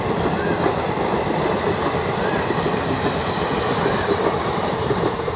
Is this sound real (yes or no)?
yes